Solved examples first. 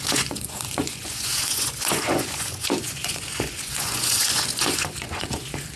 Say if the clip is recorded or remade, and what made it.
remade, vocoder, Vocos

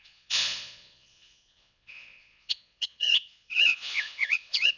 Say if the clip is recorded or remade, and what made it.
remade, vocoder, Vocos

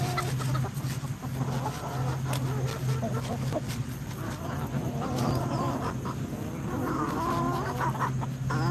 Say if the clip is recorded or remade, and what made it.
recorded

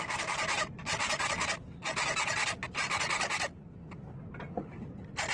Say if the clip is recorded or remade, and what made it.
recorded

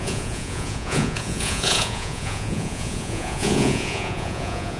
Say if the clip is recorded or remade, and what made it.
remade, vocoder, Vocos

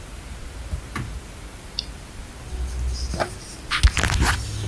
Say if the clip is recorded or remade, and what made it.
recorded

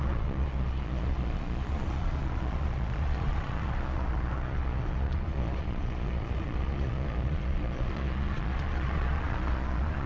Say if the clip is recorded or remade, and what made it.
remade, vocoder, Vocos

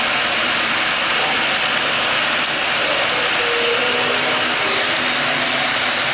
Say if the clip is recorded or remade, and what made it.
recorded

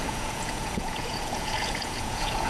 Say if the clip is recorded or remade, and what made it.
remade, vocoder, Vocos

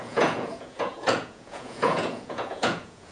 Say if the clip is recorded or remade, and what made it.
remade, vocoder, Vocos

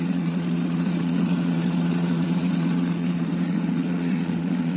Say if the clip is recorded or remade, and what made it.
remade, vocoder, Vocos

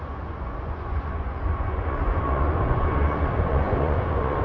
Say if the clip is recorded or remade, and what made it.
remade, vocoder, Vocos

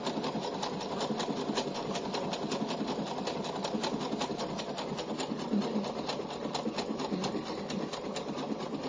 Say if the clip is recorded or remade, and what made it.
recorded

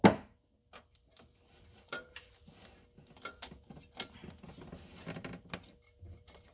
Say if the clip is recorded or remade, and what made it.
recorded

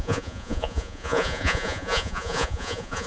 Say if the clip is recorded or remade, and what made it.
remade, vocoder, Vocos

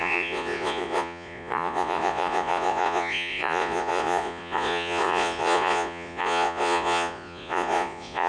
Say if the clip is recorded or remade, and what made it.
remade, vocoder, Vocos